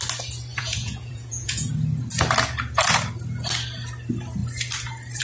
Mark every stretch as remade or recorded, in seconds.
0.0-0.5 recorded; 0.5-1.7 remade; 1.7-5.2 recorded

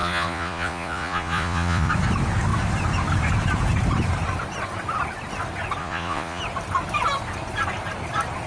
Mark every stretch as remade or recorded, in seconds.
0.0-1.9 remade; 1.9-5.8 recorded; 5.8-6.4 remade; 6.4-8.5 recorded

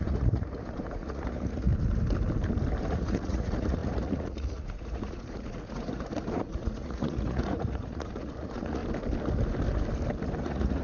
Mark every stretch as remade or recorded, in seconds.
0.0-1.7 remade; 1.7-2.9 recorded; 2.9-8.8 remade; 8.8-10.4 recorded; 10.4-10.8 remade

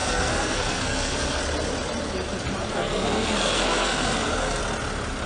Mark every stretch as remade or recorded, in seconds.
0.0-1.4 remade; 1.4-2.7 recorded; 2.7-4.6 remade; 4.6-5.3 recorded

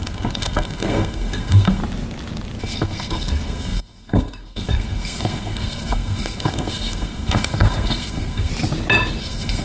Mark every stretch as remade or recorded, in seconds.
0.0-1.8 remade; 1.8-2.6 recorded; 2.6-8.5 remade; 8.5-9.2 recorded; 9.2-9.6 remade

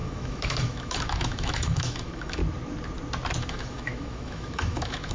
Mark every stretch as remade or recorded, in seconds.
0.0-2.4 remade; 2.4-3.4 recorded; 3.4-5.1 remade

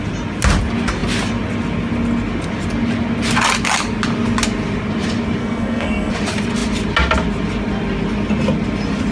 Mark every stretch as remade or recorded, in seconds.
0.0-5.4 recorded; 5.4-6.1 remade; 6.1-9.1 recorded

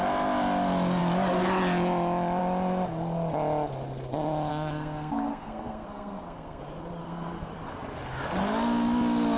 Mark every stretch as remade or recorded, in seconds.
0.0-4.5 recorded; 4.5-6.6 remade; 6.6-7.0 recorded; 7.0-7.5 remade; 7.5-9.4 recorded